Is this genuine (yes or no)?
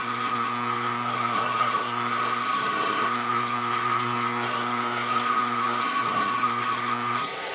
no